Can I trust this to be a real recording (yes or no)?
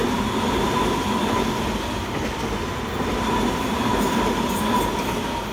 yes